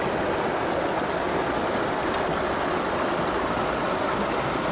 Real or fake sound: real